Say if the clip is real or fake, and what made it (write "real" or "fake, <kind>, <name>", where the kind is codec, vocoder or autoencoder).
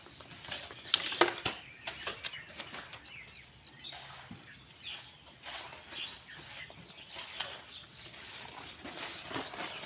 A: real